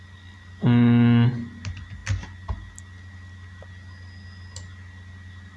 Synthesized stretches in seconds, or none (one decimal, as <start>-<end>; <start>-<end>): none